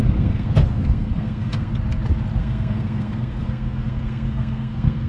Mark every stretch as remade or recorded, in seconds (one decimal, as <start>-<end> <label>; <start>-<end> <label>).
0.0-1.7 remade; 1.7-2.4 recorded; 2.4-5.1 remade